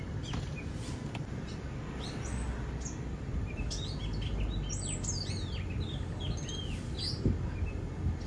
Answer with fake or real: real